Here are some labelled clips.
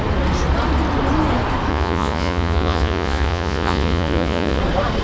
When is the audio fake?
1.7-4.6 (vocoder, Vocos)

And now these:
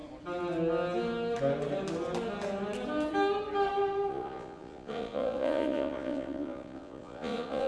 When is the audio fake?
4.1-7.7 (vocoder, Vocos)